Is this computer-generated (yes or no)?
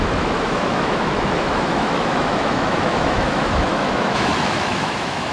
yes